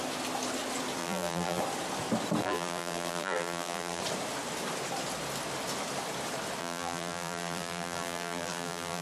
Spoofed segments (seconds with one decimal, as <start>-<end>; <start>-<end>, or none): 1.0-1.6; 2.4-4.0; 6.6-9.0